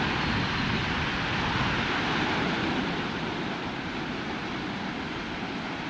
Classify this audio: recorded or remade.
recorded